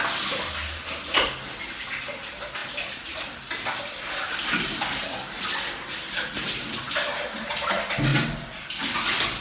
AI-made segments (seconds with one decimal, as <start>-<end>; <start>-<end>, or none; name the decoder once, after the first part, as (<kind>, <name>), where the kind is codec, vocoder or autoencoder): none